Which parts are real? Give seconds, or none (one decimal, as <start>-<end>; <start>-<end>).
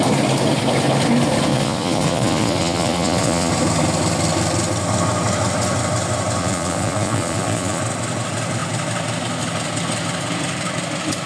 0.0-1.5; 3.5-6.4; 7.8-11.3